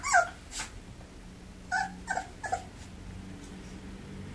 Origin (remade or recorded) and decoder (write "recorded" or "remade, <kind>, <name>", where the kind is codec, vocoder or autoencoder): recorded